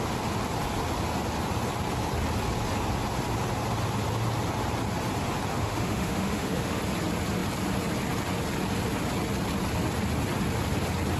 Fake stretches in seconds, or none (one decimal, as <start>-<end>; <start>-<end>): 5.5-6.8